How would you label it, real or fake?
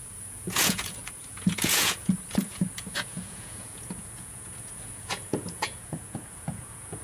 fake